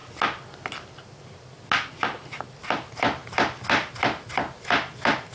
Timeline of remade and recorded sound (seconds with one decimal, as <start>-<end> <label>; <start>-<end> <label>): 0.0-5.3 recorded